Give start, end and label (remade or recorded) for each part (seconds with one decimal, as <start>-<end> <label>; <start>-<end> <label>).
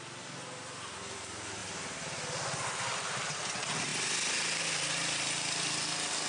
0.0-6.3 recorded